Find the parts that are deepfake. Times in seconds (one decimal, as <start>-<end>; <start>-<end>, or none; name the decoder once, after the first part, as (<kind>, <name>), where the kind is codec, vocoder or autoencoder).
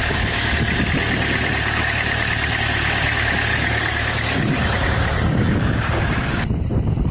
0.0-0.5 (codec, DAC); 3.5-6.0